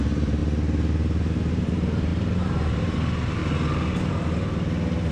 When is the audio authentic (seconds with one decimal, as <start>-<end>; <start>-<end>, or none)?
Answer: 0.4-1.5; 3.4-5.1